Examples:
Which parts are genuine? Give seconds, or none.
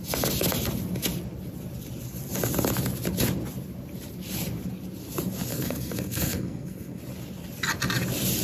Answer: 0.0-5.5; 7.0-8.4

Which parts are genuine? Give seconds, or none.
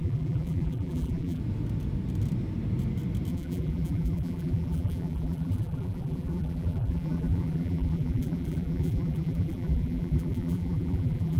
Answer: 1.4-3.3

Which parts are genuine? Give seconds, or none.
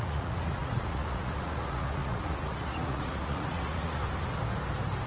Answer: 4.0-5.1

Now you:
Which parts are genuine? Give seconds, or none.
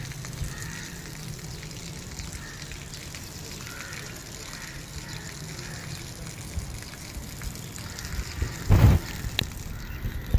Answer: 0.0-10.4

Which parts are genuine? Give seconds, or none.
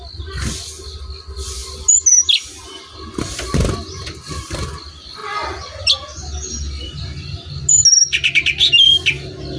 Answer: 0.0-9.6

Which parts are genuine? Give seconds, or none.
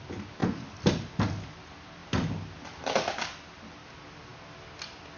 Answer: 0.0-5.2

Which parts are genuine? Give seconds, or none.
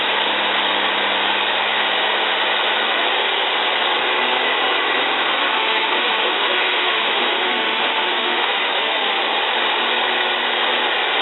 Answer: 0.0-5.4; 9.2-11.2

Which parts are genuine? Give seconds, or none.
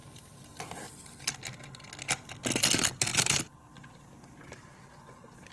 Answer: 0.0-5.5